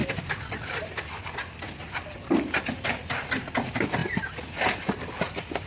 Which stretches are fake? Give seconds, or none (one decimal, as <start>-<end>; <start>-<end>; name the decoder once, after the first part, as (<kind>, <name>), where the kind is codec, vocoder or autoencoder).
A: none